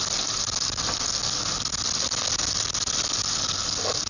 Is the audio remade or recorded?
recorded